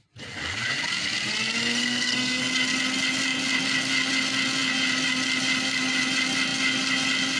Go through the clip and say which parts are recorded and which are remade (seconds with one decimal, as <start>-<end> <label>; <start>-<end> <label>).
0.0-1.7 recorded; 1.7-2.4 remade; 2.4-7.4 recorded